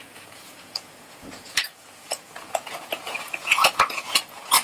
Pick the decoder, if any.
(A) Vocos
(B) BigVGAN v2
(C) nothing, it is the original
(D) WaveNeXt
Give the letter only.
A